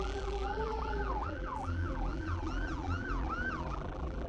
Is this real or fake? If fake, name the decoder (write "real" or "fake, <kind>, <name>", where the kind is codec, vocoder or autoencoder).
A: fake, vocoder, BigVGAN v2